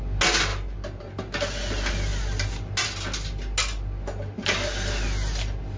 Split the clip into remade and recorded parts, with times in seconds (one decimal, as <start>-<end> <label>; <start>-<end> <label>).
0.0-5.8 recorded